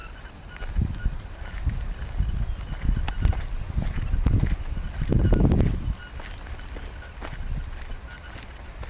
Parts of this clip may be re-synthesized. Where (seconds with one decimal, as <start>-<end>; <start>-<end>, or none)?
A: none